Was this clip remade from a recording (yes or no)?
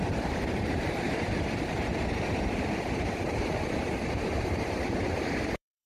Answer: yes